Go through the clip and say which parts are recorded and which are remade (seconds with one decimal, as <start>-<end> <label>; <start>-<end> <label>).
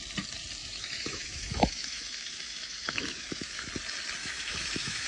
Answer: 0.0-0.6 recorded; 0.6-3.7 remade; 3.7-4.2 recorded; 4.2-5.1 remade